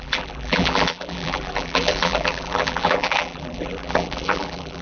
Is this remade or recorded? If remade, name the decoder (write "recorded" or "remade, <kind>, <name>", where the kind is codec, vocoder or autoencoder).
remade, vocoder, BigVGAN v2